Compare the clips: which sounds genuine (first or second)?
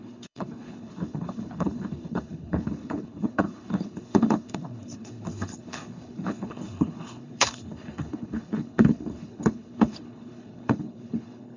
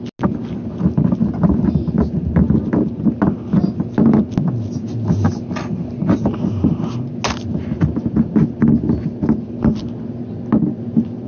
second